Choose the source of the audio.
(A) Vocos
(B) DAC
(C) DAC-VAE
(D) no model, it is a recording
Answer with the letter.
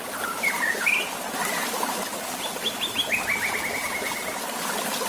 D